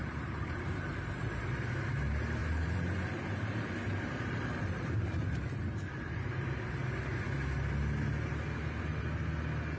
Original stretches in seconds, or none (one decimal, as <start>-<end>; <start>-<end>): 1.7-2.4; 6.7-9.8